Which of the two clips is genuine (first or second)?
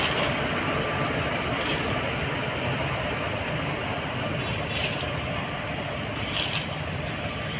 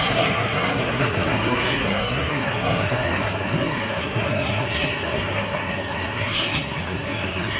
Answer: first